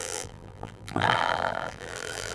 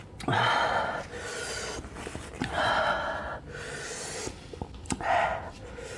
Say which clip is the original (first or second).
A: second